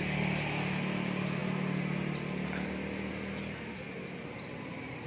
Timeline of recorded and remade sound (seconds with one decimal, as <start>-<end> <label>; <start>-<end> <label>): 0.0-5.1 recorded